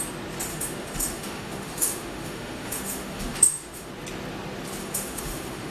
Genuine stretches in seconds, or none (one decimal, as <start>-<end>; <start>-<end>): 0.0-0.5; 3.9-4.8